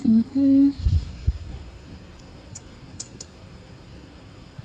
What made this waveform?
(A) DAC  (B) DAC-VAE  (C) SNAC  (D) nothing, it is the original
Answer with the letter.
C